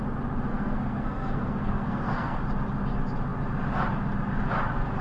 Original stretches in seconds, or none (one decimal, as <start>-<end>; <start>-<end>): 0.0-0.5; 2.4-5.0